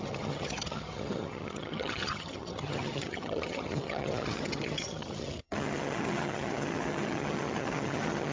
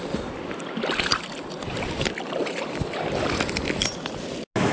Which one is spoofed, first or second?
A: first